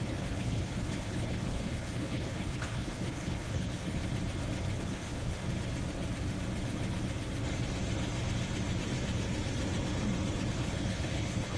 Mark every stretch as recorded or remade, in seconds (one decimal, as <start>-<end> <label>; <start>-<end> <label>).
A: 0.0-4.0 remade; 4.0-4.8 recorded; 4.8-5.4 remade; 5.4-10.5 recorded; 10.5-11.6 remade